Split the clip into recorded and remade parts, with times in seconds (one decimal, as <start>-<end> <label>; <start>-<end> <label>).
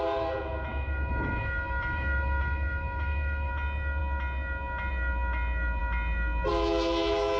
0.0-0.7 recorded; 0.7-3.5 remade; 3.5-7.4 recorded